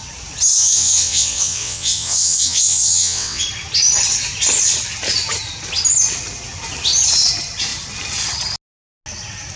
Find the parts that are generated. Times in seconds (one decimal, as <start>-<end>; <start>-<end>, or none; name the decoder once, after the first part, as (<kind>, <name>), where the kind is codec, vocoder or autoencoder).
0.5-3.4 (vocoder, WaveNeXt)